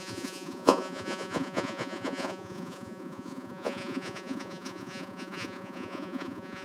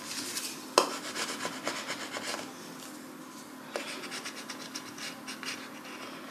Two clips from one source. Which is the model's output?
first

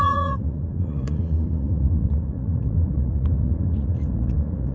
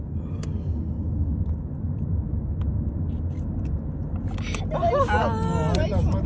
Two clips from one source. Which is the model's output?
first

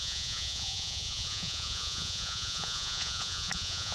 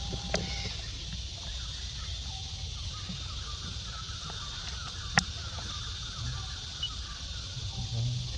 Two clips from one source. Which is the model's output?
first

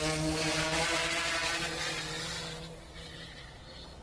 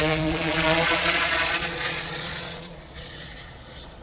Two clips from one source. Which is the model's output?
second